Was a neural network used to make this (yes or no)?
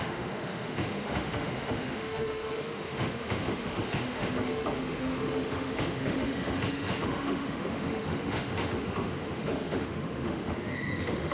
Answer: yes